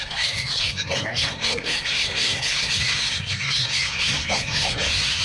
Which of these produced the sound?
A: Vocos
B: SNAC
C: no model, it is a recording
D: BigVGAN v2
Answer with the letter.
B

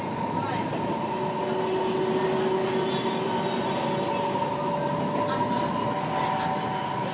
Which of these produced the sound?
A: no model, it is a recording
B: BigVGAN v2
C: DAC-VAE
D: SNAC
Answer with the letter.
A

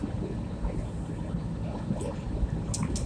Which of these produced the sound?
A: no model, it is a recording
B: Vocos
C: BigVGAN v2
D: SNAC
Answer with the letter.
A